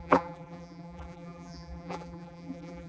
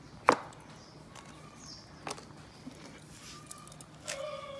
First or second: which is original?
second